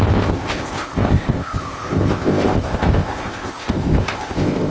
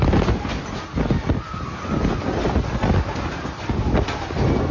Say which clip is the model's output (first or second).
first